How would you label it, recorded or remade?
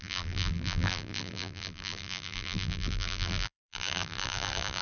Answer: remade